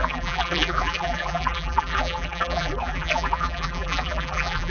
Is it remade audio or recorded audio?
remade